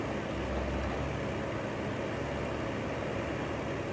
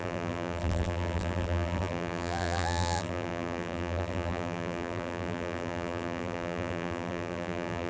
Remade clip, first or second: second